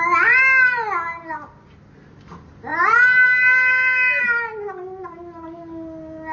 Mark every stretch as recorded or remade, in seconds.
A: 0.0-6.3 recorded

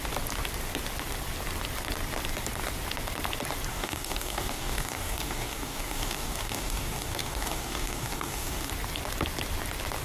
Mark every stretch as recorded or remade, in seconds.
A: 0.0-3.7 recorded; 3.7-8.7 remade; 8.7-10.0 recorded

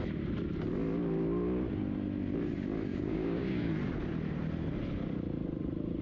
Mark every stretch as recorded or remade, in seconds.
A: 0.0-2.9 recorded; 2.9-3.7 remade; 3.7-6.0 recorded

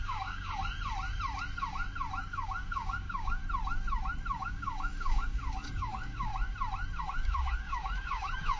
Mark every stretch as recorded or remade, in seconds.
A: 0.0-0.6 remade; 0.6-2.2 recorded; 2.2-3.4 remade; 3.4-4.4 recorded; 4.4-6.3 remade; 6.3-7.0 recorded; 7.0-8.6 remade

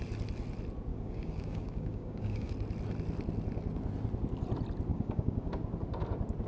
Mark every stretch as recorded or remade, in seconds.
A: 0.0-0.9 recorded; 0.9-2.5 remade; 2.5-4.9 recorded; 4.9-5.5 remade; 5.5-6.5 recorded